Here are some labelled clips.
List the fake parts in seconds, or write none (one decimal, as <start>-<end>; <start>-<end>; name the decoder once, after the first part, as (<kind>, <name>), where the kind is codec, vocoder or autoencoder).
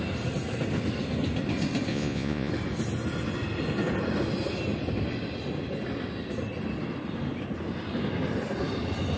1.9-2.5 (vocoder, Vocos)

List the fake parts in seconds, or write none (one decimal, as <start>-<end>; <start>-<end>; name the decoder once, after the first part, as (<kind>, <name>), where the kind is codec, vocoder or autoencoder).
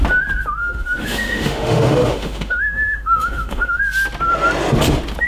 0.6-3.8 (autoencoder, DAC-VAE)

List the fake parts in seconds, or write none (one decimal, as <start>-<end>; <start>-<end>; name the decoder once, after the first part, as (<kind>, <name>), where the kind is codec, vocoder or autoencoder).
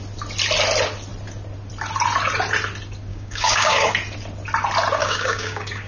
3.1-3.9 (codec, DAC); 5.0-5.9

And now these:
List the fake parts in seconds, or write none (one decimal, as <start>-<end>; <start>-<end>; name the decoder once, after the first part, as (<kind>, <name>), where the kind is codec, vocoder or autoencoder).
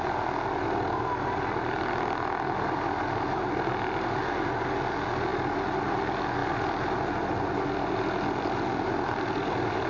none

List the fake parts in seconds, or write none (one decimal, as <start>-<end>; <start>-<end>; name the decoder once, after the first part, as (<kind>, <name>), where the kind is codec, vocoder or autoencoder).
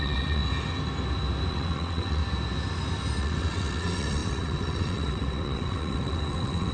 0.0-0.4 (vocoder, WaveNeXt); 1.5-2.2; 3.2-6.7